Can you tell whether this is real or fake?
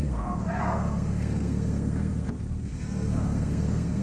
fake